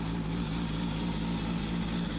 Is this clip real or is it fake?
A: real